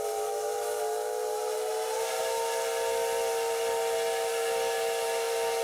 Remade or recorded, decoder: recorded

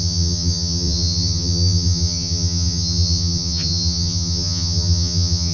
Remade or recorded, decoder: remade, vocoder, HiFi-GAN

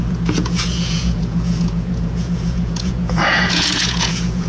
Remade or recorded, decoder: remade, vocoder, Vocos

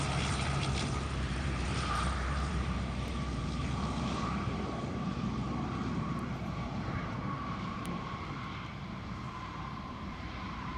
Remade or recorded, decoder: remade, vocoder, BigVGAN v2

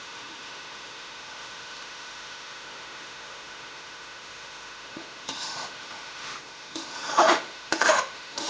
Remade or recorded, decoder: remade, autoencoder, DAC-VAE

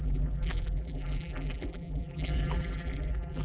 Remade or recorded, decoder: remade, vocoder, BigVGAN v2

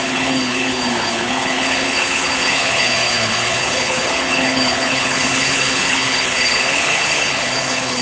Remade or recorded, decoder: remade, codec, HILCodec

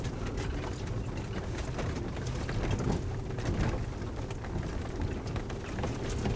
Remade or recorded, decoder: recorded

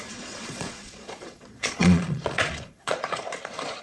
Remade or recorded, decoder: remade, vocoder, Vocos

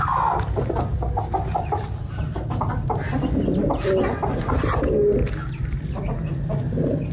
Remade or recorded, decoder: recorded